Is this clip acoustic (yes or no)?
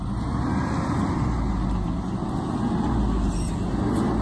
yes